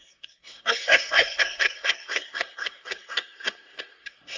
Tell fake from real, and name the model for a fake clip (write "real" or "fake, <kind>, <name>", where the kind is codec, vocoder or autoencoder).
fake, codec, SNAC